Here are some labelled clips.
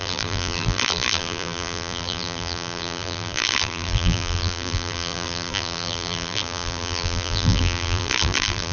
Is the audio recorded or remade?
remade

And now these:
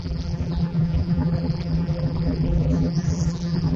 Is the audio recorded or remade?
remade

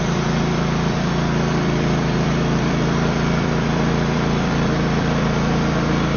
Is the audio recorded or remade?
remade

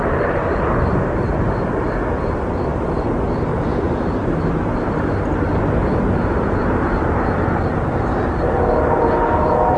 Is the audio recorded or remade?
remade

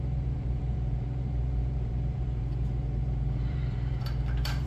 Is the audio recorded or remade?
remade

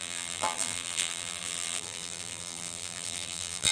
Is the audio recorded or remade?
remade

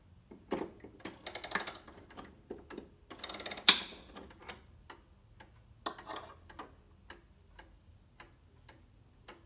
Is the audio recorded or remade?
recorded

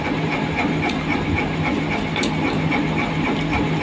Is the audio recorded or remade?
recorded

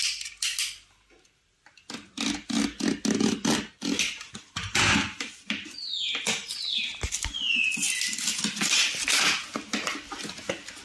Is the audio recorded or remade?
recorded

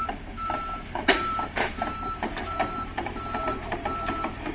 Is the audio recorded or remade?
remade